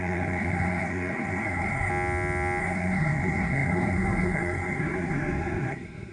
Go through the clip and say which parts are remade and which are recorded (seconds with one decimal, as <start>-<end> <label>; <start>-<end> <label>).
0.0-1.9 remade; 1.9-2.6 recorded; 2.6-6.1 remade

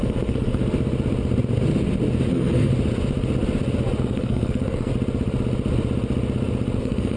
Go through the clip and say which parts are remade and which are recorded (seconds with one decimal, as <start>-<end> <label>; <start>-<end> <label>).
0.0-0.6 remade; 0.6-2.3 recorded; 2.3-2.7 remade; 2.7-4.0 recorded; 4.0-4.9 remade; 4.9-6.8 recorded; 6.8-7.2 remade

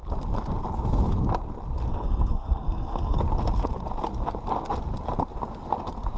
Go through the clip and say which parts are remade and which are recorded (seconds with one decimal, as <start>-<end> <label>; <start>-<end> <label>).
0.0-1.9 recorded; 1.9-3.2 remade; 3.2-6.2 recorded